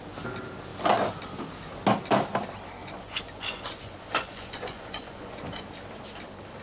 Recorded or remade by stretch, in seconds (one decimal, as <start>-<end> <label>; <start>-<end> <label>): 0.0-2.8 recorded; 2.8-5.6 remade; 5.6-6.6 recorded

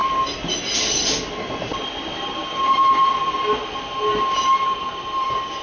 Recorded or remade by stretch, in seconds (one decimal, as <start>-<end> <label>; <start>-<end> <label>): 0.0-5.6 recorded

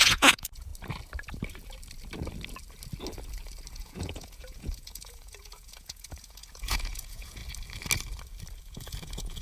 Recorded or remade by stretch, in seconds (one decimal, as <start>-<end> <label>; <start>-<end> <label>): 0.0-0.7 remade; 0.7-3.7 recorded; 3.7-7.4 remade; 7.4-8.6 recorded; 8.6-9.4 remade

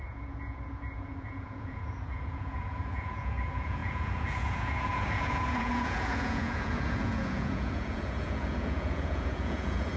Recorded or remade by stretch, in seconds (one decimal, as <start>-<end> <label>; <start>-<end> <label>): 0.0-10.0 remade

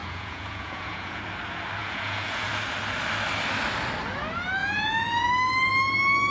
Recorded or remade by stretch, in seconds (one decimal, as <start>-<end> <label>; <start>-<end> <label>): 0.0-1.2 remade; 1.2-1.8 recorded; 1.8-2.5 remade; 2.5-4.6 recorded; 4.6-5.3 remade; 5.3-6.3 recorded

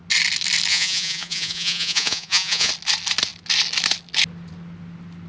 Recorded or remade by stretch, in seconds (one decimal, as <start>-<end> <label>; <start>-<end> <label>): 0.0-0.7 recorded; 0.7-2.7 remade; 2.7-5.3 recorded

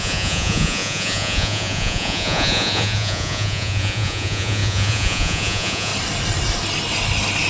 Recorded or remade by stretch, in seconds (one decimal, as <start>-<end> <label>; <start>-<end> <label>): 0.0-5.9 remade; 5.9-7.5 recorded